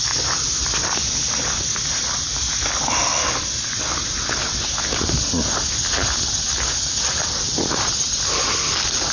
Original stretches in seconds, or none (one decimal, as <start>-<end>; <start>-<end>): 0.0-9.1